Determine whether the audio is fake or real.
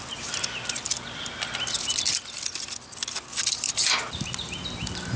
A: real